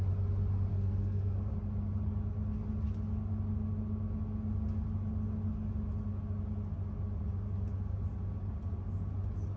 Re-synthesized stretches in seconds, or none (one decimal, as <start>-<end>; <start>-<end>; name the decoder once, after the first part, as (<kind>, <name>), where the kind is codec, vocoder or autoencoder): 0.7-1.5 (codec, SNAC)